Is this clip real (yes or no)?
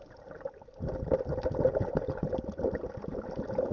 yes